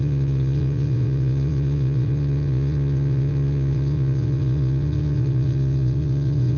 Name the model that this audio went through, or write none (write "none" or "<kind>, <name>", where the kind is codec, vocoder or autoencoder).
vocoder, Vocos